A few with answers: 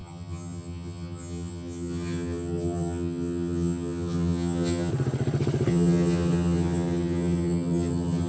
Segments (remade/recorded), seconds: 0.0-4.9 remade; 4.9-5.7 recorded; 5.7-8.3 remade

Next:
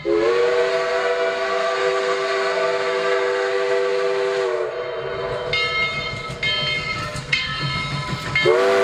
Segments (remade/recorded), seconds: 0.0-0.7 recorded; 0.7-3.5 remade; 3.5-7.0 recorded; 7.0-7.6 remade; 7.6-8.8 recorded

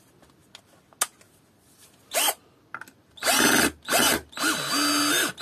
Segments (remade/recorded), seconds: 0.0-5.4 recorded

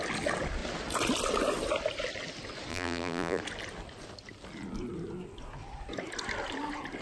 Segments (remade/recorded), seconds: 0.0-2.7 recorded; 2.7-3.4 remade; 3.4-7.0 recorded

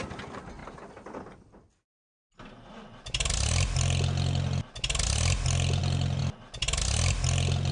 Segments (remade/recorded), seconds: 0.0-7.7 recorded

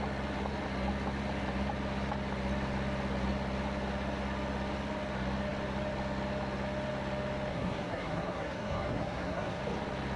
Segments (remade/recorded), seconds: 0.0-7.5 recorded; 7.5-9.6 remade; 9.6-10.2 recorded

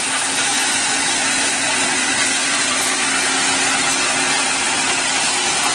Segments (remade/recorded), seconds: 0.0-0.5 recorded; 0.5-3.1 remade; 3.1-5.7 recorded